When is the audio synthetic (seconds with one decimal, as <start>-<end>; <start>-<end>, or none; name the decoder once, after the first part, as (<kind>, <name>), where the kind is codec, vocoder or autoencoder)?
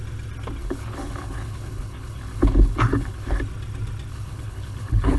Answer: 0.6-3.4 (codec, HILCodec); 4.1-5.2